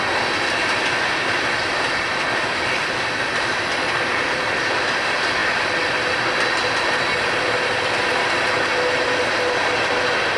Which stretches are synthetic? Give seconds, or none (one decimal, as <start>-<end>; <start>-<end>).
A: none